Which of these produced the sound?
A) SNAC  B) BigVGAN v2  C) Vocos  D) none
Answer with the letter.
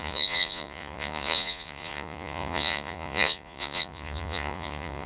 C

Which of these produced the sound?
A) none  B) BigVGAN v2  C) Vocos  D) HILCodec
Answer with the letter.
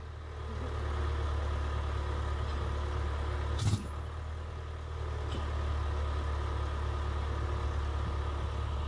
A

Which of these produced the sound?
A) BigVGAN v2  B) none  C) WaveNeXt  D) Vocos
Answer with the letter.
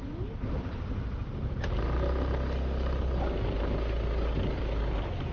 B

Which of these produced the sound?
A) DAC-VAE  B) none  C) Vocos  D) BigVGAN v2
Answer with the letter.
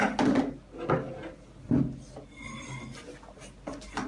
B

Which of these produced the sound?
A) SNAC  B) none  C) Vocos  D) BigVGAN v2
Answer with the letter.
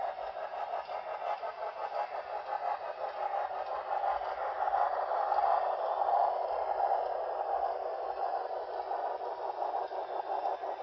B